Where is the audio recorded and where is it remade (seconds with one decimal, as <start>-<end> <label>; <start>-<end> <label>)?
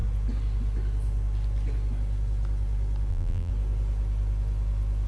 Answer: 0.0-3.1 recorded; 3.1-3.5 remade; 3.5-5.1 recorded